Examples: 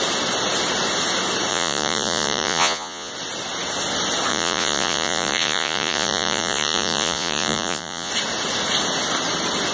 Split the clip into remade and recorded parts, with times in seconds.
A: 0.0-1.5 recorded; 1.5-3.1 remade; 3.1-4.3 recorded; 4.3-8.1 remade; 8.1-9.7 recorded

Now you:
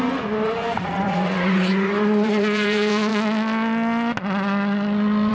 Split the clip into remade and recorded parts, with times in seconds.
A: 0.0-3.1 remade; 3.1-5.3 recorded

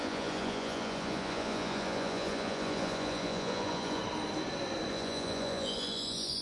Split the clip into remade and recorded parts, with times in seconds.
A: 0.0-4.0 remade; 4.0-4.9 recorded; 4.9-6.4 remade